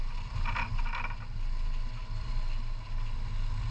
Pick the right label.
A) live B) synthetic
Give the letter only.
A